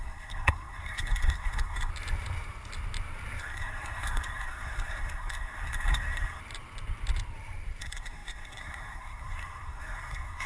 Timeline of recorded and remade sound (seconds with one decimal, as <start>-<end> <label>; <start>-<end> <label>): 0.0-1.9 remade; 1.9-3.4 recorded; 3.4-6.4 remade; 6.4-7.8 recorded; 7.8-10.5 remade